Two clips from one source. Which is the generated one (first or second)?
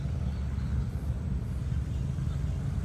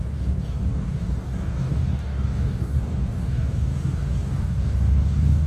second